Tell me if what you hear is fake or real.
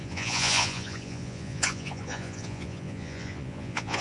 fake